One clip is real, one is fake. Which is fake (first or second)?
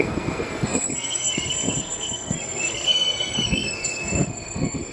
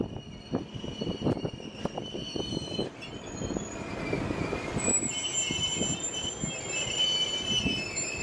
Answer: first